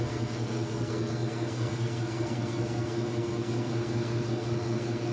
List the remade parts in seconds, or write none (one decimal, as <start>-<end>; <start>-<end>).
0.0-5.1